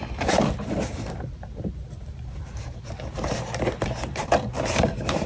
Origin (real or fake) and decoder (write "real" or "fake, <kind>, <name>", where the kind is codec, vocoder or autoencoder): fake, vocoder, BigVGAN v2